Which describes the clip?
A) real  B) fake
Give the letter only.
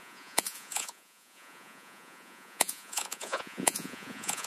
B